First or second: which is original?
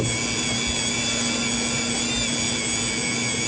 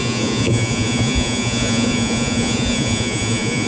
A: first